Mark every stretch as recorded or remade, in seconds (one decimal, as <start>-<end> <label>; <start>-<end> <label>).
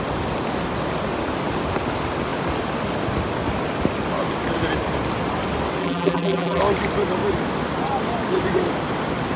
0.0-5.8 recorded; 5.8-6.6 remade; 6.6-9.4 recorded